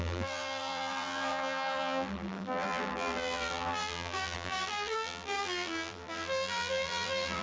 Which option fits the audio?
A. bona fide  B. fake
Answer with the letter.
B